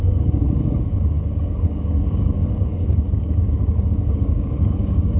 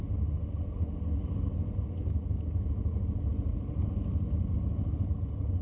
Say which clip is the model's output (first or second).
first